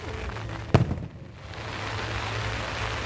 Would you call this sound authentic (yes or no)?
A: yes